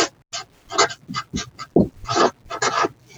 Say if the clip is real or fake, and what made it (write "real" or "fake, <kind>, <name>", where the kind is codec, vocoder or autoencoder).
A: real